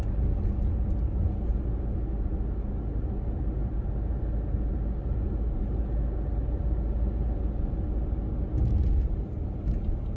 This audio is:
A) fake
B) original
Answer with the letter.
B